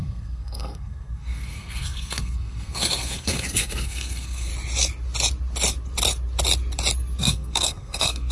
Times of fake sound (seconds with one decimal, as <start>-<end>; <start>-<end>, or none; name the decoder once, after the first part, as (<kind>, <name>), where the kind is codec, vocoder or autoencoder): 0.0-4.5 (codec, SNAC); 7.2-8.3